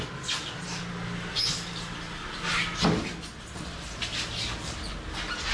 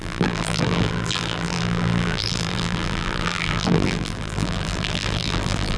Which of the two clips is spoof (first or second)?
second